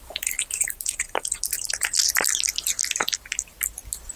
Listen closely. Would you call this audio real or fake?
real